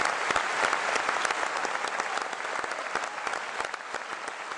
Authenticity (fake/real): real